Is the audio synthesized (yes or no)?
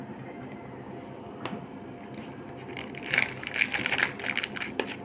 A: no